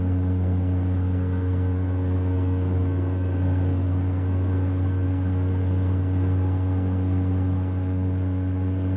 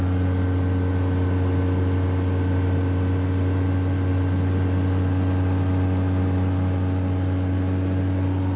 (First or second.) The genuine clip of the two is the second